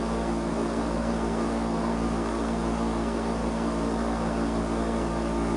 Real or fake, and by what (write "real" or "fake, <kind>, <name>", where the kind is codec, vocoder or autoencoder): fake, codec, SNAC